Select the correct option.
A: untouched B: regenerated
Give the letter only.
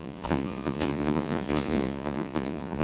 B